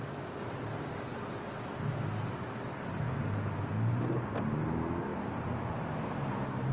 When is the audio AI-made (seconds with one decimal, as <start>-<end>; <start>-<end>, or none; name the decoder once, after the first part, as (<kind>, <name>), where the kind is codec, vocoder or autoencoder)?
none